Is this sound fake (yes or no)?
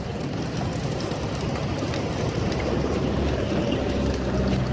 no